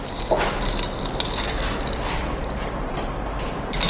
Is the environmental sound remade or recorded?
recorded